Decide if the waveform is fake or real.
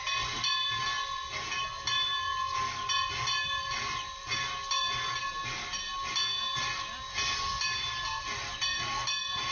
real